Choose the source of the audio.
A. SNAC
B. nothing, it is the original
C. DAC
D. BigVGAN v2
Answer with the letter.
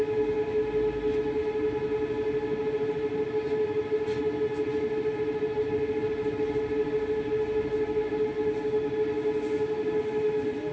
B